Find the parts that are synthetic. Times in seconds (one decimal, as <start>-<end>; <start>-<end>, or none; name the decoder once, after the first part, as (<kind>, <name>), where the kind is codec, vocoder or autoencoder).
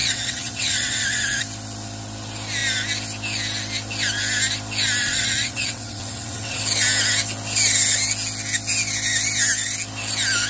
0.0-1.4 (vocoder, WaveNeXt); 5.0-6.6